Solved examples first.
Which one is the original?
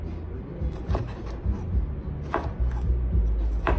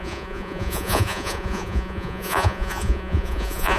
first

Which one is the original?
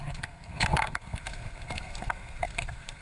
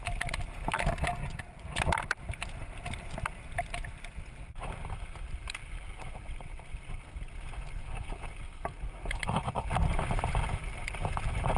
second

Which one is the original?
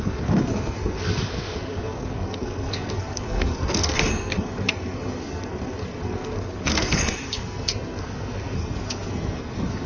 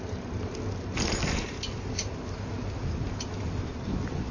second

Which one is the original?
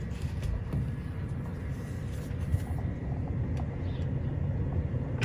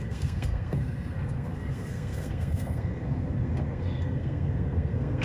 first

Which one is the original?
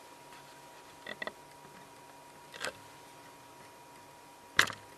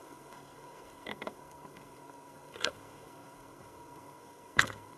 first